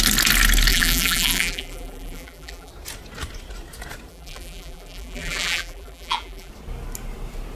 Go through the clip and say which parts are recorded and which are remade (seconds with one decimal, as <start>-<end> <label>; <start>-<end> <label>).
0.0-0.7 recorded; 0.7-2.7 remade; 2.7-4.1 recorded; 4.1-6.5 remade; 6.5-7.6 recorded